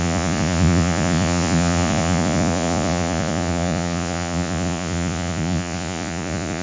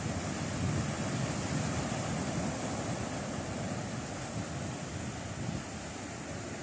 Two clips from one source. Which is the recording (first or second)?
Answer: second